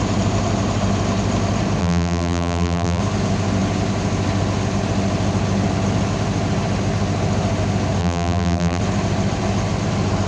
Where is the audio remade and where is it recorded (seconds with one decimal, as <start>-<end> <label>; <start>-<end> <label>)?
0.0-1.8 recorded; 1.8-3.0 remade; 3.0-8.0 recorded; 8.0-8.8 remade; 8.8-10.3 recorded